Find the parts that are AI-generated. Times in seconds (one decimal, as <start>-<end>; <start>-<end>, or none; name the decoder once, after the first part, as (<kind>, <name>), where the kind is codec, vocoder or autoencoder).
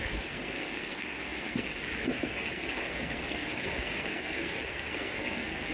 0.0-5.7 (codec, SNAC)